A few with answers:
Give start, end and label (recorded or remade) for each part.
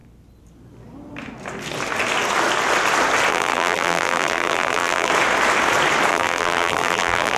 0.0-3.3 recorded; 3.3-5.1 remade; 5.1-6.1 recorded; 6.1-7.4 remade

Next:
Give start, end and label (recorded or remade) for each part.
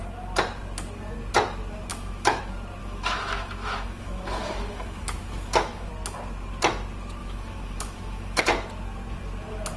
0.0-1.9 recorded; 1.9-2.4 remade; 2.4-2.8 recorded; 2.8-5.9 remade; 5.9-7.2 recorded; 7.2-8.4 remade; 8.4-9.8 recorded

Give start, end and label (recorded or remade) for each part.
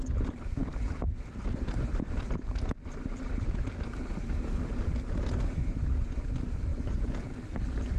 0.0-6.7 remade; 6.7-7.6 recorded; 7.6-8.0 remade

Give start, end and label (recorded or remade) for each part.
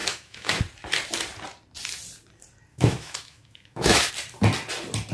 0.0-0.6 remade; 0.6-2.7 recorded; 2.7-4.1 remade; 4.1-5.1 recorded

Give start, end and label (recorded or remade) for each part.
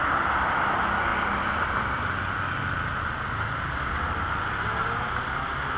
0.0-5.8 recorded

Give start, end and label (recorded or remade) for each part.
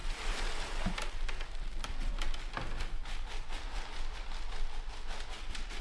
0.0-2.1 remade; 2.1-5.8 recorded